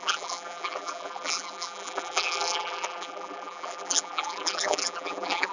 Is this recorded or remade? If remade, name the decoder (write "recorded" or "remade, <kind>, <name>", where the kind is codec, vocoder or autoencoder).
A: remade, vocoder, BigVGAN v2